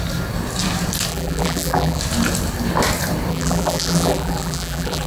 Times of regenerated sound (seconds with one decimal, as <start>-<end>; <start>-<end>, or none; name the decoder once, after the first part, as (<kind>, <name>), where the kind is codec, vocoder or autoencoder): 1.1-2.0 (vocoder, BigVGAN v2); 3.3-5.1